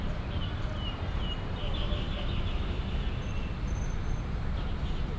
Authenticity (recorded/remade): recorded